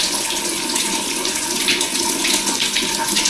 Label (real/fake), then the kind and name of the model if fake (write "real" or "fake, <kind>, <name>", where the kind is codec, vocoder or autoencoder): fake, vocoder, Vocos